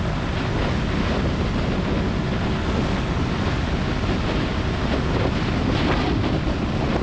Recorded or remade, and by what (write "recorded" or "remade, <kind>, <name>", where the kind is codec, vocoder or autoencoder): recorded